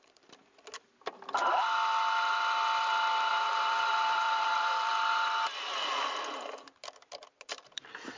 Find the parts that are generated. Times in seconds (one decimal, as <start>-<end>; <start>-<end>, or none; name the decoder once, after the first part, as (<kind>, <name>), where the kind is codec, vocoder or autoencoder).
0.0-0.4 (vocoder, BigVGAN v2); 3.3-4.9; 7.5-8.2

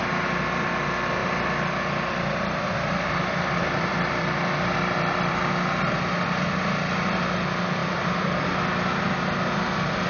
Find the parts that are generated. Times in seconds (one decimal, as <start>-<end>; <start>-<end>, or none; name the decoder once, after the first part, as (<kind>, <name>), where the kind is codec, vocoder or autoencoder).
1.2-5.4 (vocoder, BigVGAN v2); 7.8-8.7

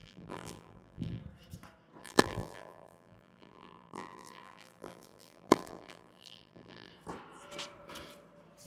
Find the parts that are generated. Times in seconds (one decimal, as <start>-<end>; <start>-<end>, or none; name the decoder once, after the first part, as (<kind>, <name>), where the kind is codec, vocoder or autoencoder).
0.0-1.2 (vocoder, BigVGAN v2); 2.0-6.9